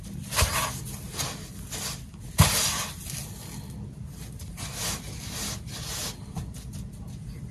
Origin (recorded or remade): recorded